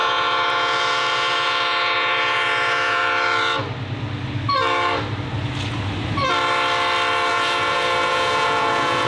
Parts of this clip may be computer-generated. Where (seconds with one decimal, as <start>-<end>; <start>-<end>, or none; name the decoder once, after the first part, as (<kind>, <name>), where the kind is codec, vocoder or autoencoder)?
0.0-3.0 (vocoder, Vocos); 7.3-9.1